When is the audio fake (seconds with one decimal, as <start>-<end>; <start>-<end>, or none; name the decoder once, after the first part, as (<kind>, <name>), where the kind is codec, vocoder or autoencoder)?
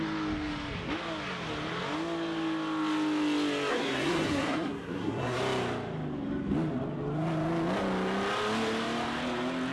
3.7-5.4 (codec, SNAC)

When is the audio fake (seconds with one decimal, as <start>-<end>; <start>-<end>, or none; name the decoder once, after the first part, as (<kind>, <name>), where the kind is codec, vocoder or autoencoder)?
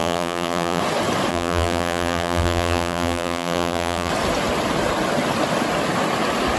0.0-0.8 (vocoder, BigVGAN v2); 1.3-4.1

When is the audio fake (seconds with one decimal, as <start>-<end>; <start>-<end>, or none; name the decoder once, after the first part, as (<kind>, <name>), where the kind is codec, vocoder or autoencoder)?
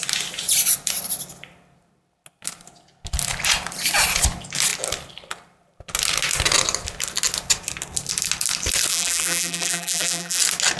8.9-10.4 (vocoder, BigVGAN v2)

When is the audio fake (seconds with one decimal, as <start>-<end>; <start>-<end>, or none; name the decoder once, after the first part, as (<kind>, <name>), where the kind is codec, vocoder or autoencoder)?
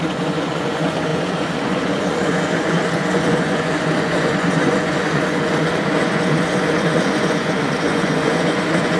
0.0-9.0 (vocoder, Vocos)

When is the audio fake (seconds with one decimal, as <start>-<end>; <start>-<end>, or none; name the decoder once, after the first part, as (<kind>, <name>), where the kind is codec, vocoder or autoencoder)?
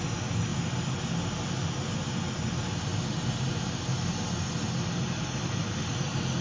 none